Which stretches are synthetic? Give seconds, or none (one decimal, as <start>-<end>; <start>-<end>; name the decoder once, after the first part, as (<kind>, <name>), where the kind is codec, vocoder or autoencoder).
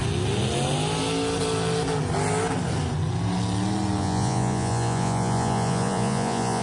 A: 4.0-6.6 (vocoder, Vocos)